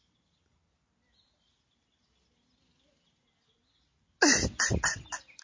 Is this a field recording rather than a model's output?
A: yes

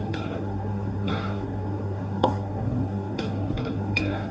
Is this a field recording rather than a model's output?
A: no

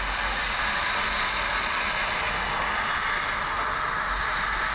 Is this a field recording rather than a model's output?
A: yes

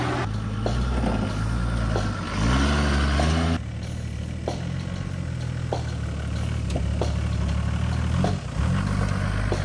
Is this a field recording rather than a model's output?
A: yes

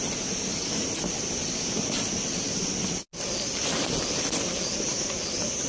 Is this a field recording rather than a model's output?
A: yes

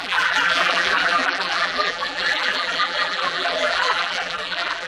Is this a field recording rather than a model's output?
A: no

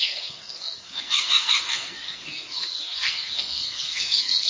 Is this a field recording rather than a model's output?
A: no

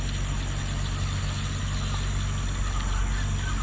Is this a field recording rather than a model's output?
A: yes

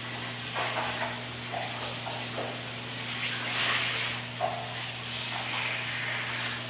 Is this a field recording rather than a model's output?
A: yes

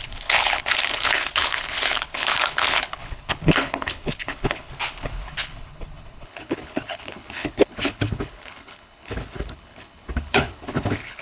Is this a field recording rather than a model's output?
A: no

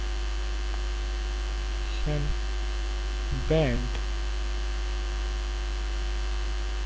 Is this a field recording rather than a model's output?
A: no